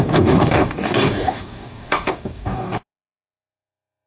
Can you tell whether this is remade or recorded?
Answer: remade